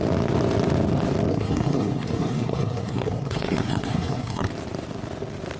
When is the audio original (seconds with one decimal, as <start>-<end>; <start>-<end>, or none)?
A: 0.0-1.3; 4.5-5.6